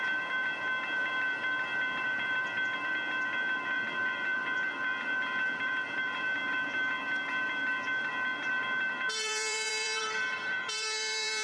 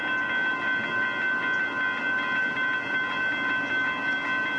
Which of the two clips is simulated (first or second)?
first